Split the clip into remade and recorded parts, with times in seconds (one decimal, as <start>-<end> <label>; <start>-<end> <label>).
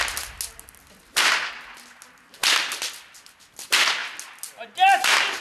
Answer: 0.0-5.4 recorded